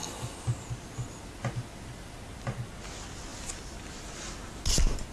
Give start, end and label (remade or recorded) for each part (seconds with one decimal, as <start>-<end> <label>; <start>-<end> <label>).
0.0-5.1 recorded